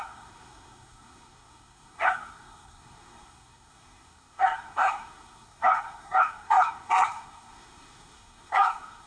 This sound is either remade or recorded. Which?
remade